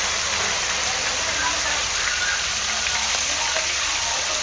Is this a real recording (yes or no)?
yes